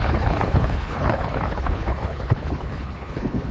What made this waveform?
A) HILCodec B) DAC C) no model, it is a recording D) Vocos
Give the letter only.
A